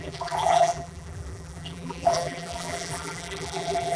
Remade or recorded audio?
remade